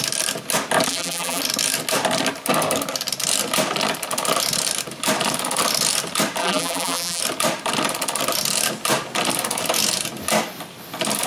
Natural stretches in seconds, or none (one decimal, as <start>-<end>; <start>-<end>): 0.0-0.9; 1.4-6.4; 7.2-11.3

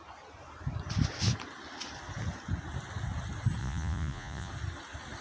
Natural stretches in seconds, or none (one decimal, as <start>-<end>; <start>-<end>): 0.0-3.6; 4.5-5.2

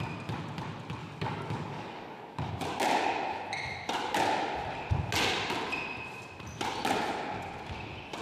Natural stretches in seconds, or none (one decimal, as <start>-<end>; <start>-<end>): 0.0-1.0; 2.5-8.2

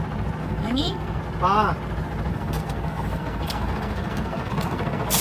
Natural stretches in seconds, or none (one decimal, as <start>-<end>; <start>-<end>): 0.0-0.4; 1.2-2.3

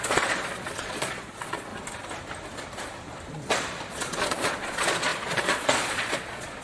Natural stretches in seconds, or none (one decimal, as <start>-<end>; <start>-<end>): 1.7-3.9

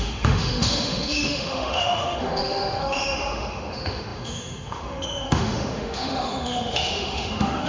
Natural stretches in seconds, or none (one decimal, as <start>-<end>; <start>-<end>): none

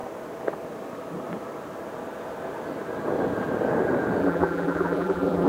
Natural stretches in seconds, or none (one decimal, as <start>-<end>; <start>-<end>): 0.0-4.2